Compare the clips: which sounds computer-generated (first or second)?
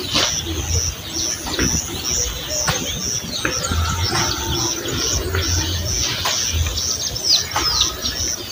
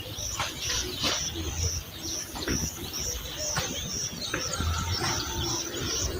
second